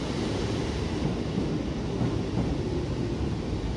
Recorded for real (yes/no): yes